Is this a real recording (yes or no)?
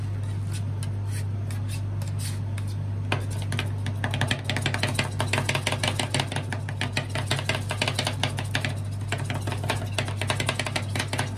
yes